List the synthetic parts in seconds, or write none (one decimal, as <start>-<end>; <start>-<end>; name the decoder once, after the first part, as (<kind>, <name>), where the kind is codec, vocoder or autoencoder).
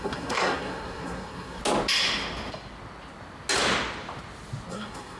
0.0-1.6 (codec, SNAC); 4.7-5.2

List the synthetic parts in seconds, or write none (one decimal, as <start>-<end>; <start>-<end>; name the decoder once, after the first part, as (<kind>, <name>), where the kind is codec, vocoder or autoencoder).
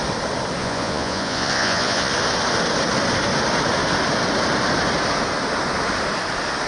0.6-2.1 (vocoder, Vocos)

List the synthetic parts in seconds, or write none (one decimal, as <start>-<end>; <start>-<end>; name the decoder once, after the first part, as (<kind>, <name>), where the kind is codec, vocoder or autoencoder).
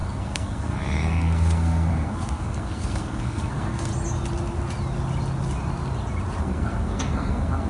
0.0-3.9 (codec, SNAC); 6.4-7.7